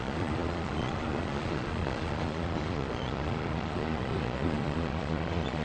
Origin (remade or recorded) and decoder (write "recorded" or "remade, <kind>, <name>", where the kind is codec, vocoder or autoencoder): remade, vocoder, Vocos